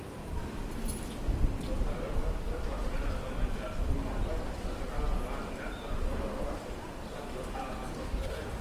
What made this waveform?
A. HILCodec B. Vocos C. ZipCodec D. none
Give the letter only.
D